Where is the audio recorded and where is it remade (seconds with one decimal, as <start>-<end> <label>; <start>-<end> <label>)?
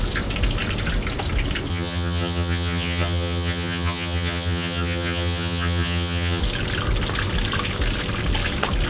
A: 0.0-1.7 recorded; 1.7-6.4 remade; 6.4-8.9 recorded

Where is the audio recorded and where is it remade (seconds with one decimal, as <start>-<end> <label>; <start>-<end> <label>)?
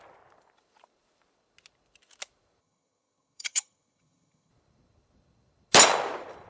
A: 0.0-2.6 recorded; 2.6-4.5 remade; 4.5-6.5 recorded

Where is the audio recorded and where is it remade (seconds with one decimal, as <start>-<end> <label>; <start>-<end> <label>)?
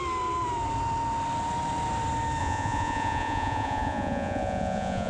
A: 0.0-2.4 recorded; 2.4-5.1 remade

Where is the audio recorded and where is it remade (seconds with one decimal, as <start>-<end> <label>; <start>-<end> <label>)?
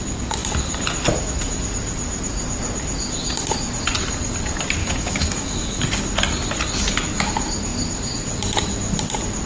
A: 0.0-4.8 recorded; 4.8-5.8 remade; 5.8-9.5 recorded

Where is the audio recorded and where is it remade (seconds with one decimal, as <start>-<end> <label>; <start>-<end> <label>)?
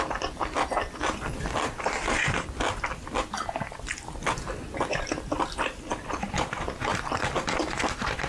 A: 0.0-8.3 recorded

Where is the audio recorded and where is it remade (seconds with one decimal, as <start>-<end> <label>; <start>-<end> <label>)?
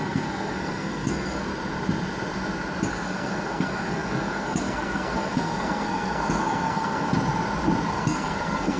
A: 0.0-1.5 remade; 1.5-2.9 recorded; 2.9-7.1 remade; 7.1-7.9 recorded; 7.9-8.8 remade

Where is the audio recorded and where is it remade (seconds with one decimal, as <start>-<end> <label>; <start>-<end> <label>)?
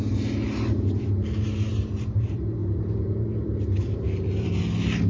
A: 0.0-5.1 recorded